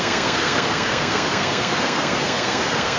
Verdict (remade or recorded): remade